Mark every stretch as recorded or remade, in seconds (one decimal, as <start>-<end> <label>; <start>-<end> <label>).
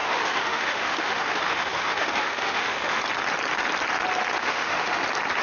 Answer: 0.0-3.0 remade; 3.0-4.4 recorded; 4.4-5.0 remade; 5.0-5.4 recorded